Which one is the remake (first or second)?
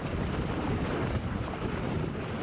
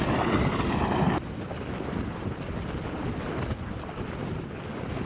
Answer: first